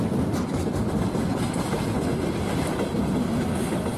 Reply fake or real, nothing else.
real